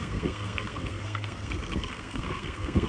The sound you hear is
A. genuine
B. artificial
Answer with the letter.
B